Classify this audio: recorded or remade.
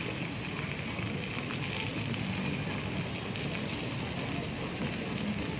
recorded